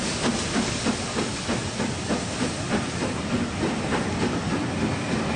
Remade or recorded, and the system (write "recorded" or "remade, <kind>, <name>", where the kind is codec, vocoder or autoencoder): recorded